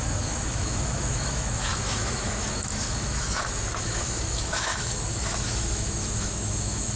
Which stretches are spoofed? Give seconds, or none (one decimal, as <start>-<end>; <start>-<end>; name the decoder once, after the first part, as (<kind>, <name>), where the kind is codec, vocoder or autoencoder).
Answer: 0.0-7.0 (autoencoder, DAC-VAE)